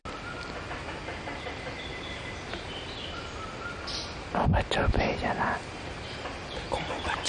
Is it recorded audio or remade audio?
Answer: recorded